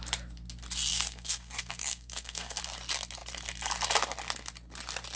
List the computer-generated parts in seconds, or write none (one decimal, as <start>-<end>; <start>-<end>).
0.9-2.6